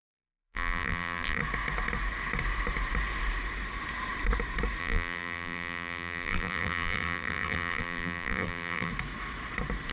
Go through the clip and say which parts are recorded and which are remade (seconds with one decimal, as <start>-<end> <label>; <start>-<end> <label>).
0.0-1.4 remade; 1.4-4.8 recorded; 4.8-8.9 remade; 8.9-9.9 recorded